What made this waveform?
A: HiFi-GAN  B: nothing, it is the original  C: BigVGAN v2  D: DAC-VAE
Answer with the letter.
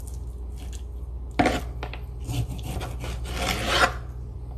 B